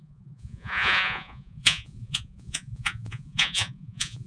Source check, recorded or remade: remade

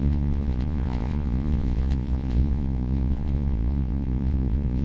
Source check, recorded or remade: remade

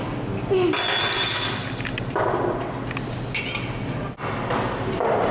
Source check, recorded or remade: recorded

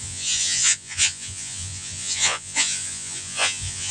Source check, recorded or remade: remade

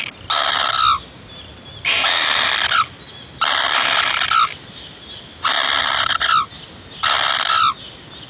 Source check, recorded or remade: recorded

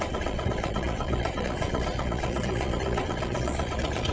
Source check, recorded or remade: remade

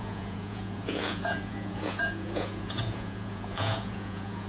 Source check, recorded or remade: remade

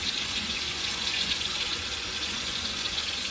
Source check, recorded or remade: remade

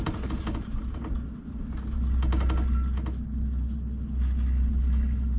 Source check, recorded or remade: recorded